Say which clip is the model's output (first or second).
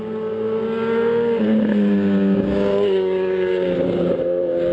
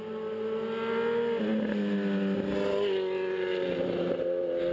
first